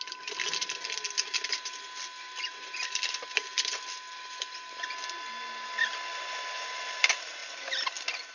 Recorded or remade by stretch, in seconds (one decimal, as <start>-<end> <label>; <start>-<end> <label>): 0.0-8.3 recorded